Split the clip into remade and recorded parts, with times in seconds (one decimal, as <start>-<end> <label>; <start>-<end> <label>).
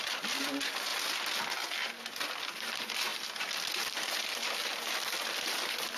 0.0-6.0 recorded